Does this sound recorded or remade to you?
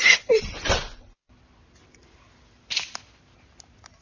recorded